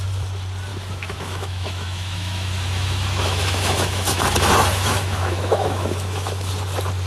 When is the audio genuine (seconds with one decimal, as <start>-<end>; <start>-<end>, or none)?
0.0-0.7; 4.2-4.7; 6.5-7.1